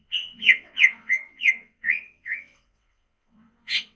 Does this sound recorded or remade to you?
remade